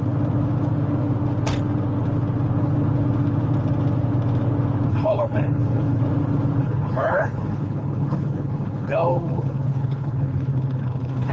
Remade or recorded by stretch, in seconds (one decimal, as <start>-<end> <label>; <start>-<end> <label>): 0.0-4.9 recorded; 4.9-6.0 remade; 6.0-6.6 recorded; 6.6-11.3 remade